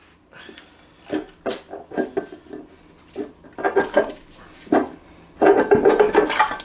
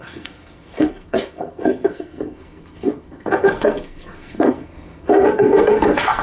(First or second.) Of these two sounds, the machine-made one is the second